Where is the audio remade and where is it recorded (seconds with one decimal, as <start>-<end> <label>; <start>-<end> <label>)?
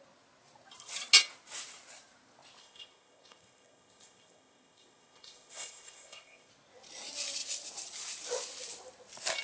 0.0-2.6 recorded; 2.6-6.5 remade; 6.5-9.4 recorded